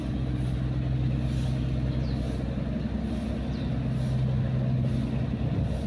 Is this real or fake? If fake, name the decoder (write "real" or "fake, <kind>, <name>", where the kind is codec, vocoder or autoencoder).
real